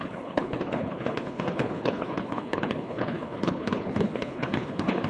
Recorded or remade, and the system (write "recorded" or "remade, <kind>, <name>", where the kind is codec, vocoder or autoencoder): remade, codec, HILCodec